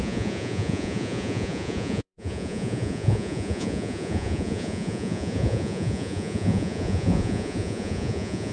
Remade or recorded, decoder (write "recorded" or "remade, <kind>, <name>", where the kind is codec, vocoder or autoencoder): remade, vocoder, Vocos